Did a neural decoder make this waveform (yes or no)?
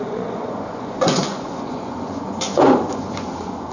yes